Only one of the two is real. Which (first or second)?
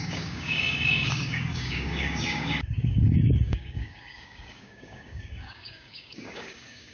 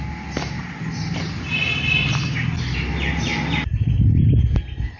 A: second